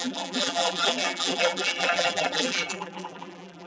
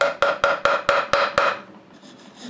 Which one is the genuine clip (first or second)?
second